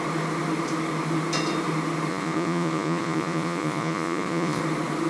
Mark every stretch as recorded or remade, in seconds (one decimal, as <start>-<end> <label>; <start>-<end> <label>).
0.0-2.1 recorded; 2.1-4.6 remade; 4.6-5.1 recorded